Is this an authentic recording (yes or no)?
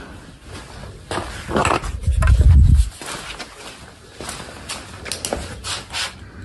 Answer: yes